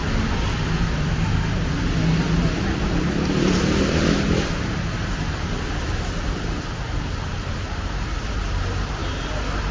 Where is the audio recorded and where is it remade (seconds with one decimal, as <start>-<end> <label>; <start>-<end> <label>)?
0.0-3.3 recorded; 3.3-9.0 remade; 9.0-9.7 recorded